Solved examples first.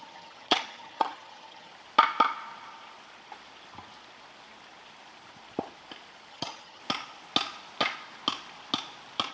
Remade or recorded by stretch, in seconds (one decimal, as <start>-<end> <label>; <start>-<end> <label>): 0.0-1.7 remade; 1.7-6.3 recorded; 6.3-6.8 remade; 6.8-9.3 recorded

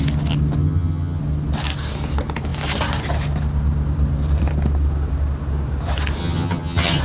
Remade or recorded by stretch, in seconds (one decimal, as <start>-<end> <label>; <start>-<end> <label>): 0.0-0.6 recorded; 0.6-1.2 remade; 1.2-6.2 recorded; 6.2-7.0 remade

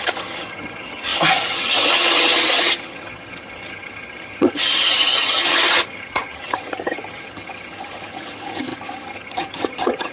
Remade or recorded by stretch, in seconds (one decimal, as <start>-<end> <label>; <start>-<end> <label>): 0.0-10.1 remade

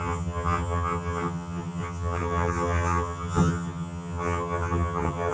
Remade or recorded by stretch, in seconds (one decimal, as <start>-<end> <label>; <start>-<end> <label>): 0.0-5.3 remade

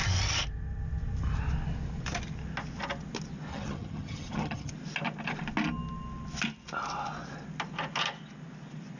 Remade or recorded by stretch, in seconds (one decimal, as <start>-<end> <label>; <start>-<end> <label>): 0.0-3.5 recorded; 3.5-4.7 remade; 4.7-9.0 recorded